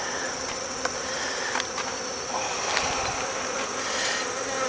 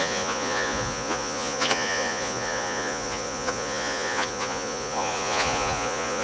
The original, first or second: first